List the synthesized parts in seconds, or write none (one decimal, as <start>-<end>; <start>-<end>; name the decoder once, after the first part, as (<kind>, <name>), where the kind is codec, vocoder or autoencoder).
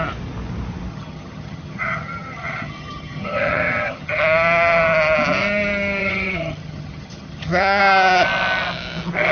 0.9-4.2 (vocoder, HiFi-GAN); 6.0-7.8